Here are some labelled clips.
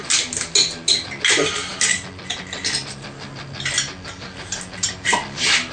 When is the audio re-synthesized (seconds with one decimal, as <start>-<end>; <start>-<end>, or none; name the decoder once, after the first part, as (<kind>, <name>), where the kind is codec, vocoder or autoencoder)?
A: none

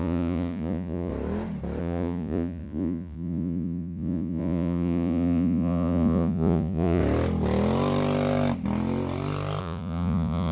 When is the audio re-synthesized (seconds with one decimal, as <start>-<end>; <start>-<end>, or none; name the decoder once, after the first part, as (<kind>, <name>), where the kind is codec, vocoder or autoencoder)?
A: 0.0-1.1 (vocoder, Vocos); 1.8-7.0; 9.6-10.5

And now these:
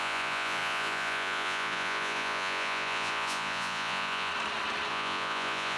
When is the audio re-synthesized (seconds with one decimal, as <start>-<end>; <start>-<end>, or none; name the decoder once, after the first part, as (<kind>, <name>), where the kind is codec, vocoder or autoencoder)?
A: 0.0-4.3 (vocoder, Vocos); 4.9-5.8

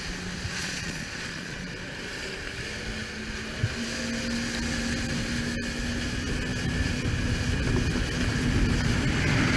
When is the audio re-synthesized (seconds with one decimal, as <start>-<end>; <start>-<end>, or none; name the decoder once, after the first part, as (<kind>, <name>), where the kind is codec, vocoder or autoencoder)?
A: 0.6-1.7 (vocoder, Vocos)

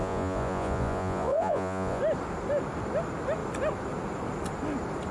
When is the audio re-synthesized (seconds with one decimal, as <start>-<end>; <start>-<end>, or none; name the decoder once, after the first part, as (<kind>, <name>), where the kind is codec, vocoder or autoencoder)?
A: 0.0-2.0 (vocoder, Vocos)